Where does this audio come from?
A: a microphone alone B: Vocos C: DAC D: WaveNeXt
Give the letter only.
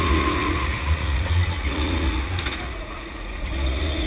B